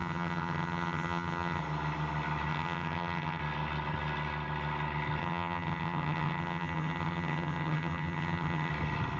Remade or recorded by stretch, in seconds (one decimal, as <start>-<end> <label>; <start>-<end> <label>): 0.0-1.6 remade; 1.6-2.5 recorded; 2.5-3.4 remade; 3.4-5.2 recorded; 5.2-8.7 remade; 8.7-9.2 recorded